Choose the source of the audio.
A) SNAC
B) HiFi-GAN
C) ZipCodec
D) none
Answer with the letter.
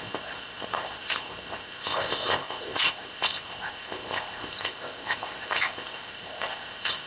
C